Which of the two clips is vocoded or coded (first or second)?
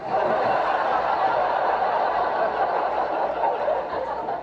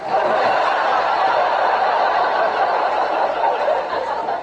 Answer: second